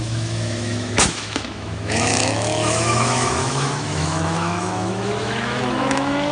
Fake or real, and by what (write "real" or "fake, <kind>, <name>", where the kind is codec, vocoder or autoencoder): fake, autoencoder, DAC-VAE